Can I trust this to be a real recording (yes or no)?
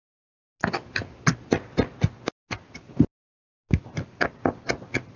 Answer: yes